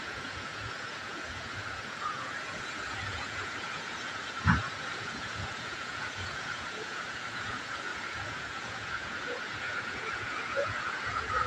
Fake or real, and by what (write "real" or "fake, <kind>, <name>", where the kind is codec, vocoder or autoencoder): fake, vocoder, Vocos